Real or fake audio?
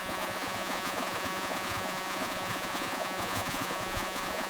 fake